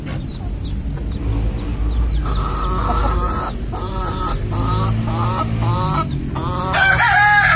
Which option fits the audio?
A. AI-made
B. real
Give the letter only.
B